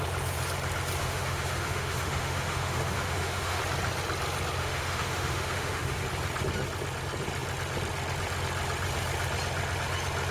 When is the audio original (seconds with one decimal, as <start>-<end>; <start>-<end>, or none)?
0.0-1.0; 3.6-4.6; 6.0-10.3